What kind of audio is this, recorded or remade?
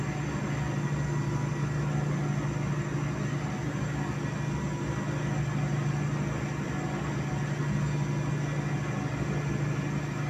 recorded